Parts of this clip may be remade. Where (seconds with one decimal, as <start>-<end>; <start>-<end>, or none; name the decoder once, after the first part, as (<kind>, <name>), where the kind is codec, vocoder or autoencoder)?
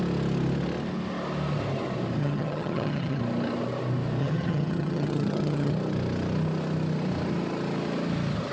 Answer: 2.2-3.2 (vocoder, HiFi-GAN); 4.2-5.7